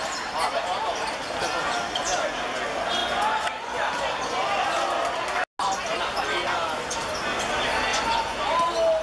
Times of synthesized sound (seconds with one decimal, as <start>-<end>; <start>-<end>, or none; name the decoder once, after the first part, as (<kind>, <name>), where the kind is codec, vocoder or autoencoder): 3.0-3.7 (vocoder, Vocos); 7.9-8.5